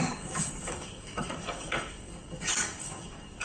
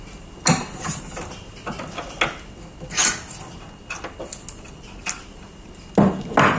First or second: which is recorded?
second